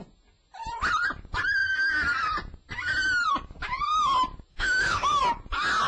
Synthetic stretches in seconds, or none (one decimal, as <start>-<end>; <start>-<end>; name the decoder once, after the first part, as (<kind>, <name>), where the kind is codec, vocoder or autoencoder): 4.5-5.2 (autoencoder, DAC-VAE)